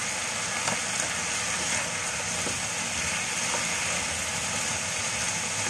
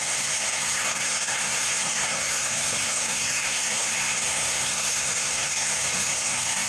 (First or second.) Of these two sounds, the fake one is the second